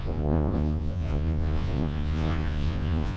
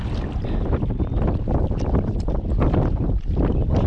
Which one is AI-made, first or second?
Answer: first